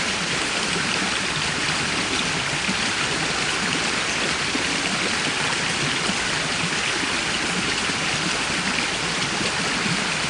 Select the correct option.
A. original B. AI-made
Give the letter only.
A